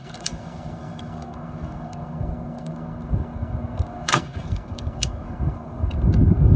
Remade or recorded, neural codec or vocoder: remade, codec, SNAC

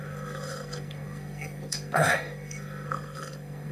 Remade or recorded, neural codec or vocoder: remade, codec, SNAC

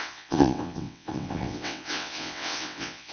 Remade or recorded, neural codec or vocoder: remade, vocoder, WaveNeXt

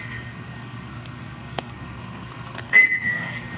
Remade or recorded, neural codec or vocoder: remade, codec, SNAC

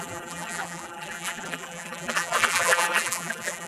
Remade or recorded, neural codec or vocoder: remade, vocoder, BigVGAN v2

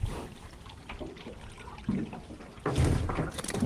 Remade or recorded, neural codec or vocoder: recorded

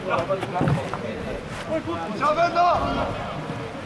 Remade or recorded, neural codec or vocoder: recorded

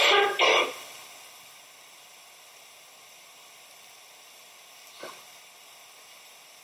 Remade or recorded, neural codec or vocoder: recorded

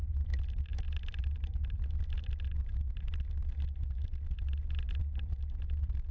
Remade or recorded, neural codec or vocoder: recorded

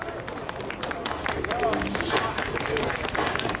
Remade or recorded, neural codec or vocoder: recorded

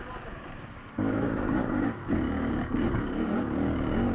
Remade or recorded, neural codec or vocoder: remade, codec, DAC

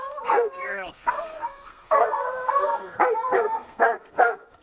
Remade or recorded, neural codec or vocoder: remade, codec, SNAC